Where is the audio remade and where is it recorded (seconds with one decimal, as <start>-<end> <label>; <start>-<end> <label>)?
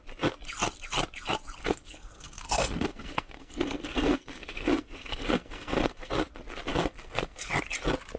0.0-1.6 recorded; 1.6-6.1 remade; 6.1-6.7 recorded; 6.7-7.5 remade; 7.5-8.2 recorded